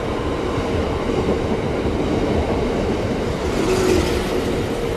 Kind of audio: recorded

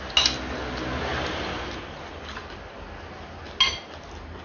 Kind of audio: recorded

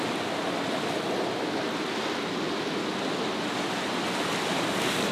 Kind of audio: recorded